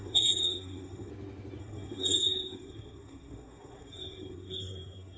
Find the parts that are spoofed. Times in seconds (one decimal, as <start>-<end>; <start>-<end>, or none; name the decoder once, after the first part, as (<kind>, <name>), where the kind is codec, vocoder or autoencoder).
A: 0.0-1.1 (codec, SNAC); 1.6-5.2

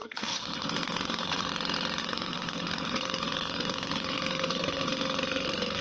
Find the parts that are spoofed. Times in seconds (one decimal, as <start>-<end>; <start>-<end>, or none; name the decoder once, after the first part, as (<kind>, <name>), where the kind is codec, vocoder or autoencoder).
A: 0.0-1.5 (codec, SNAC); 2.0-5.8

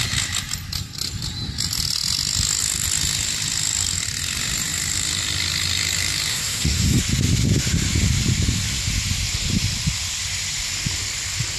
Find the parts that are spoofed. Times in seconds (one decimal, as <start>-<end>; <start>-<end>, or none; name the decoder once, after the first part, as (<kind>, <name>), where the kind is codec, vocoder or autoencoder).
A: 6.3-7.0 (codec, SNAC)

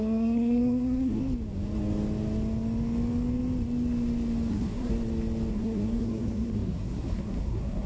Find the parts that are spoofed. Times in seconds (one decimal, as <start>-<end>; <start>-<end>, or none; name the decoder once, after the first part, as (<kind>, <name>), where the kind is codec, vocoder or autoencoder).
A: 0.0-1.2 (codec, SNAC); 4.5-4.9; 5.5-7.9

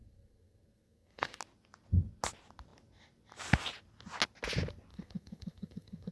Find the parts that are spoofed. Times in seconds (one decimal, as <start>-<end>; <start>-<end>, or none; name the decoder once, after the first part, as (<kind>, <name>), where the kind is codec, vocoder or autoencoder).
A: 0.0-1.4 (codec, SNAC); 4.9-6.1

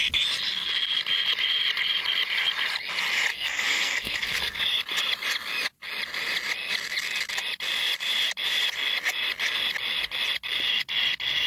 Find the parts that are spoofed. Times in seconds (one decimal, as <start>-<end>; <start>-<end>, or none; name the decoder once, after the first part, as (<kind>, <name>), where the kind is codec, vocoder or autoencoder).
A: 3.3-4.6 (codec, SNAC)

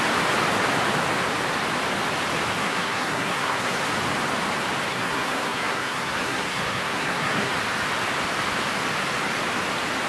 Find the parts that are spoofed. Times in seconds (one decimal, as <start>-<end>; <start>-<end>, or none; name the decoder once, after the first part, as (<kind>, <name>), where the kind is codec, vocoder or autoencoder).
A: 2.6-3.8 (codec, SNAC); 4.9-7.5